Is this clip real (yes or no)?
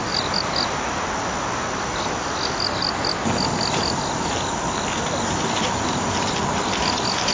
yes